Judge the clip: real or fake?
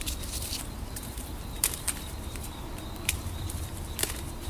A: fake